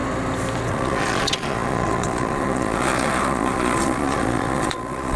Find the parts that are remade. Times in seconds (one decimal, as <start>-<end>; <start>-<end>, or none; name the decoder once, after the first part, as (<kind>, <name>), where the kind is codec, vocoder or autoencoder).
0.7-5.2 (vocoder, Vocos)